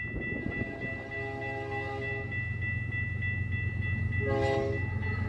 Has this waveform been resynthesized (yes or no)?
no